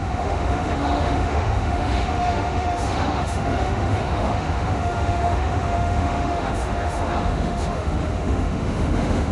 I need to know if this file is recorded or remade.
remade